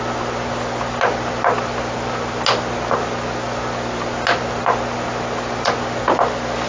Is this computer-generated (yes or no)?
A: no